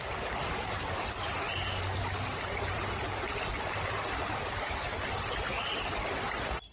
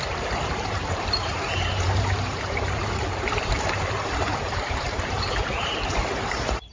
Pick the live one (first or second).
first